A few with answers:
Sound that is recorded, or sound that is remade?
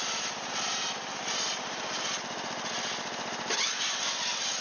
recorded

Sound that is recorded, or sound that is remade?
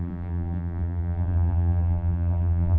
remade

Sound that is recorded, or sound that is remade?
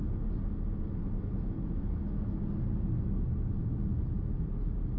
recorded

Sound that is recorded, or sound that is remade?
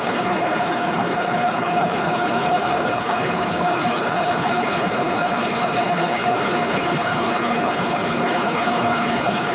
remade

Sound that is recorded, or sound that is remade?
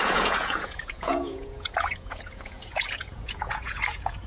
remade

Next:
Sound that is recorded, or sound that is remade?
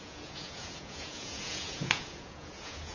remade